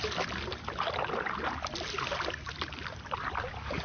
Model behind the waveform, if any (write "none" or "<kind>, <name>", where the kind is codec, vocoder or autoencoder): none